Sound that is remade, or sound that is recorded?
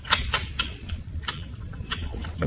remade